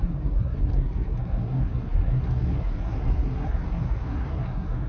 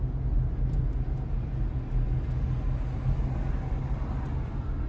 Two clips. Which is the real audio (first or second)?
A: second